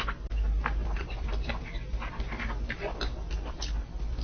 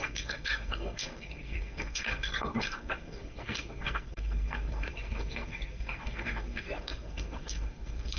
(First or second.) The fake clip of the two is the second